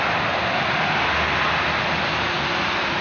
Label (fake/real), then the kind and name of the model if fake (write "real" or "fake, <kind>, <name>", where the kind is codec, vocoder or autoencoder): real